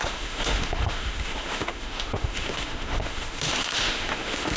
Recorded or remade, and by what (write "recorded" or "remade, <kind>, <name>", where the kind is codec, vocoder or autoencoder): remade, autoencoder, DAC-VAE